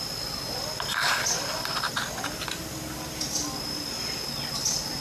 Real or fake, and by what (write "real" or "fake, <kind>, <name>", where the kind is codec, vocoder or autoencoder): real